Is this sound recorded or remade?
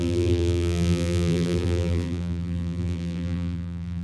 remade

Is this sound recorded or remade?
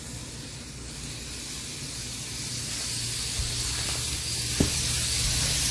recorded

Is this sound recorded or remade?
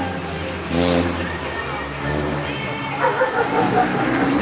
recorded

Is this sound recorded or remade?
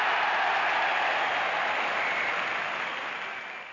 recorded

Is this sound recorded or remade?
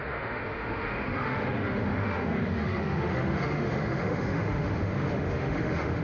remade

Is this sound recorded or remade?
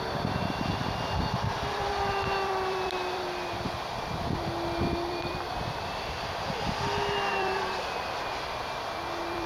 remade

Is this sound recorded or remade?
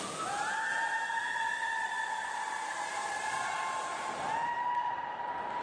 recorded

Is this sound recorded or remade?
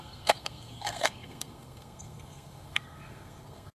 remade